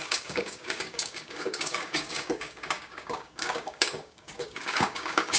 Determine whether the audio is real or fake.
fake